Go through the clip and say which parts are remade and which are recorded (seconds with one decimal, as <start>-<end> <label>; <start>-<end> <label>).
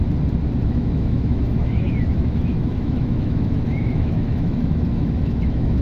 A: 0.0-0.6 recorded; 0.6-5.8 remade